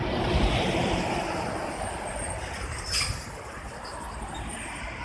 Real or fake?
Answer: real